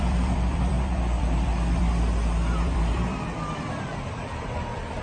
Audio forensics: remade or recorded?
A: remade